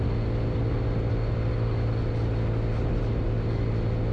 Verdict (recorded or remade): recorded